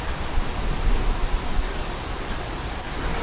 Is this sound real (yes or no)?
no